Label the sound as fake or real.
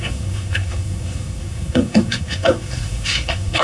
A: fake